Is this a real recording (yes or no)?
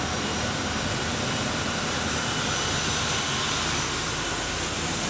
yes